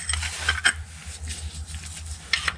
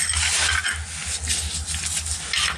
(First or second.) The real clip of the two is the second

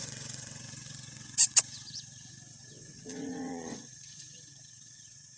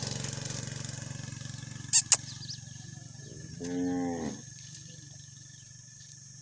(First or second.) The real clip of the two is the second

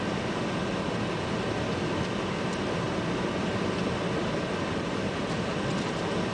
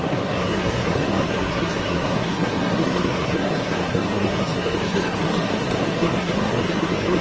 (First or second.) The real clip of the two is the first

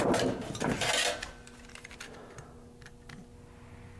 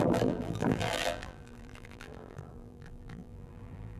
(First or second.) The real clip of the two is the first